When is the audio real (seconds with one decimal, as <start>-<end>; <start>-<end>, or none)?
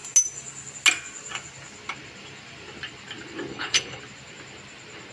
0.0-3.5; 4.0-5.1